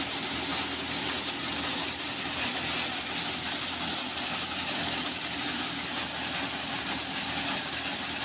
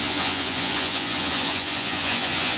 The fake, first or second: second